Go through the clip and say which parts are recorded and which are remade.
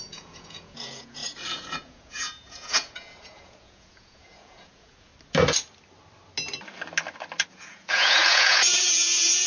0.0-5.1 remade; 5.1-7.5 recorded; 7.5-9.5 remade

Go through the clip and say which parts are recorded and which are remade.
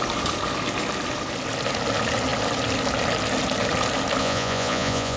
0.0-4.2 recorded; 4.2-5.2 remade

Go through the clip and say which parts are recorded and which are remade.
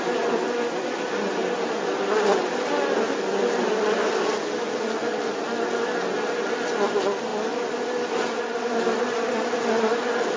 0.0-10.4 recorded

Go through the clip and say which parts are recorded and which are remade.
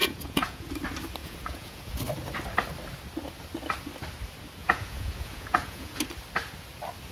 0.0-0.7 remade; 0.7-1.2 recorded; 1.2-1.9 remade; 1.9-4.6 recorded; 4.6-6.0 remade; 6.0-7.1 recorded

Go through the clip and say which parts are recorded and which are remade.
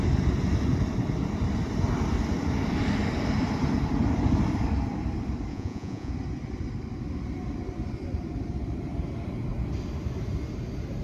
0.0-5.5 recorded; 5.5-6.1 remade; 6.1-11.0 recorded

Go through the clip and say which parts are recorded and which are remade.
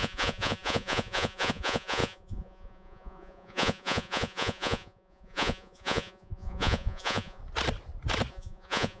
0.0-7.4 remade; 7.4-8.3 recorded; 8.3-9.0 remade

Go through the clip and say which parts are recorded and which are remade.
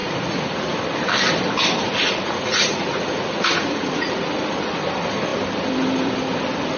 0.0-0.7 remade; 0.7-2.0 recorded; 2.0-4.2 remade; 4.2-6.8 recorded